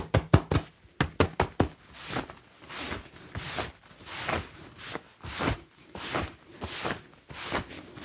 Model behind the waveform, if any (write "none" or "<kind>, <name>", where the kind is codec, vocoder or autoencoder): none